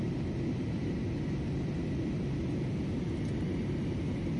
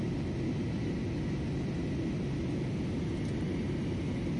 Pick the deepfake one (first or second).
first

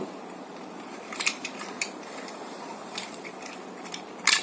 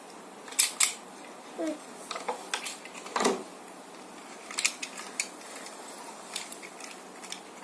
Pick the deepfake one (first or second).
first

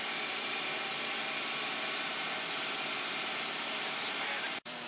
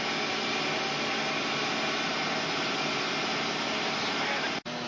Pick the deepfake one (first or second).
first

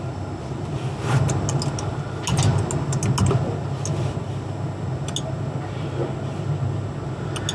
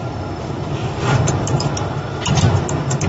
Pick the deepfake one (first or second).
second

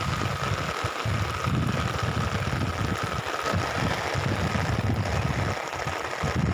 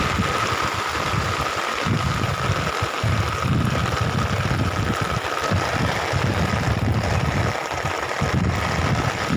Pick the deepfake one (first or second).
second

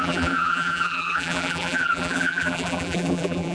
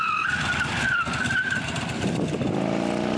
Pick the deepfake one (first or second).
first